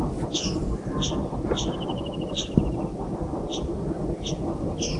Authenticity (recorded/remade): recorded